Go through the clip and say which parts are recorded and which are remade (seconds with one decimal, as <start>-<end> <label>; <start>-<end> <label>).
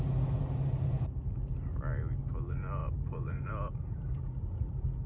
0.0-0.4 recorded; 0.4-1.2 remade; 1.2-2.8 recorded; 2.8-5.1 remade